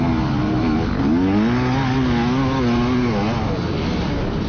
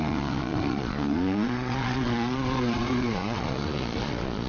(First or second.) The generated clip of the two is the second